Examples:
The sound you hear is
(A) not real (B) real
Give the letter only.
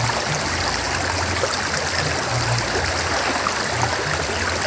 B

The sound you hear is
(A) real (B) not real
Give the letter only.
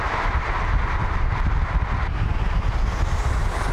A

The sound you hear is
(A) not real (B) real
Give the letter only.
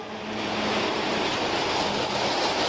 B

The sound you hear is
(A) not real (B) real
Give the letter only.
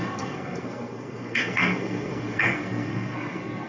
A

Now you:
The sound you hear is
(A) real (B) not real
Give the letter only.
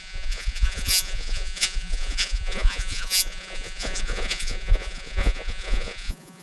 B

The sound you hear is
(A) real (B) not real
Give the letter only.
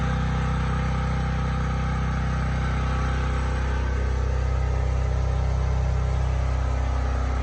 A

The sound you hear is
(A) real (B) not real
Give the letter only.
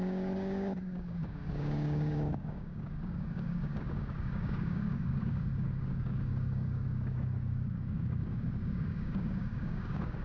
B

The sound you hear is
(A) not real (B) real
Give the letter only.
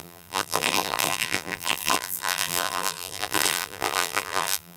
A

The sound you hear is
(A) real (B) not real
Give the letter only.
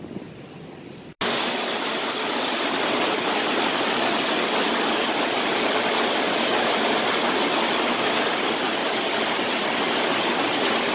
A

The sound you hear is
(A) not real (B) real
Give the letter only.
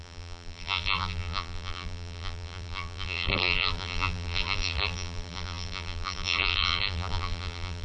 A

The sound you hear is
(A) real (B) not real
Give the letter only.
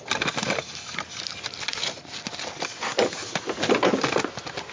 A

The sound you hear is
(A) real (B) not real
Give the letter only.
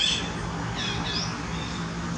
A